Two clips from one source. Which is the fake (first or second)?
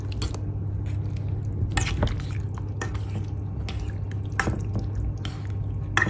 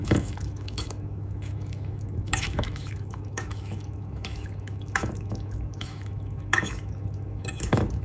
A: second